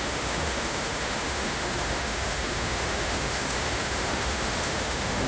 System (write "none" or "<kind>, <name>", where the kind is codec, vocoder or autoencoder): autoencoder, DAC-VAE